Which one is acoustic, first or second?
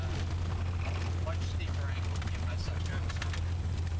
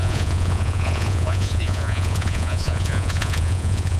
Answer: first